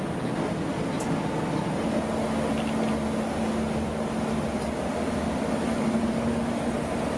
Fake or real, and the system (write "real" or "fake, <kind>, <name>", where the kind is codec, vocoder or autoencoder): real